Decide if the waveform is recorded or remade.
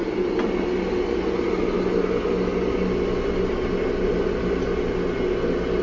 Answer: recorded